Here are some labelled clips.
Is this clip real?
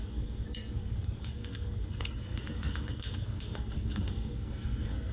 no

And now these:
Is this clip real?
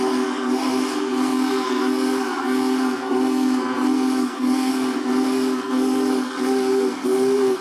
no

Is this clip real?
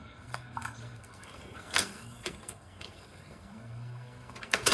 no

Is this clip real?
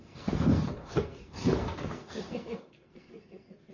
no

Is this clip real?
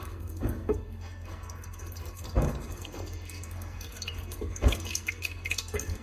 no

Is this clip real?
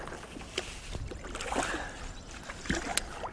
yes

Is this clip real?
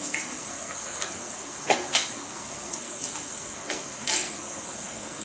no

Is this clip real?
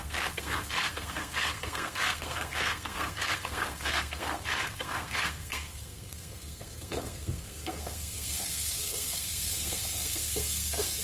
no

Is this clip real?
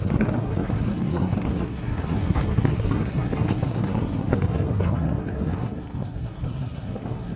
no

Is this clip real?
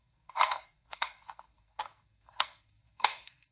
no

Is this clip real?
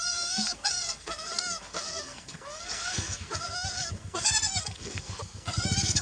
no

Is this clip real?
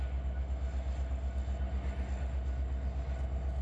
yes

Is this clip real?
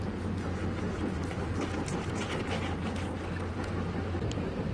yes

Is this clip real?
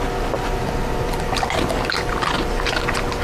yes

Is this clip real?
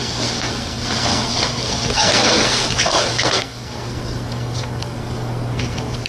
no